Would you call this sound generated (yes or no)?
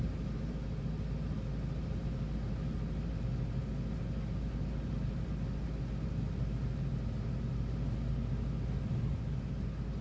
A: no